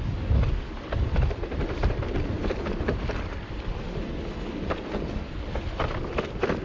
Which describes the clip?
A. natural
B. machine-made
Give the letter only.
A